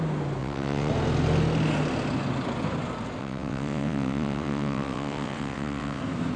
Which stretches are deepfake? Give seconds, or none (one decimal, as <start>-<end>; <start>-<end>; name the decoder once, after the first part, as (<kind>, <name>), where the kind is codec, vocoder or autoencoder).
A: 0.4-0.9 (vocoder, WaveNeXt); 3.2-6.0